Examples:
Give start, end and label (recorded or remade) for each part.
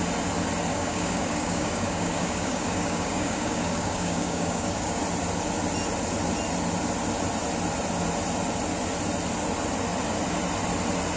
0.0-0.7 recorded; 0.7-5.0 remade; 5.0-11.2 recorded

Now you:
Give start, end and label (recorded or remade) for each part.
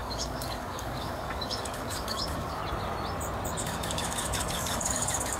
0.0-2.6 remade; 2.6-3.6 recorded; 3.6-5.4 remade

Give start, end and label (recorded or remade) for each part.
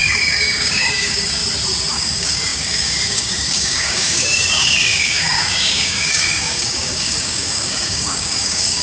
0.0-1.4 remade; 1.4-1.9 recorded; 1.9-8.8 remade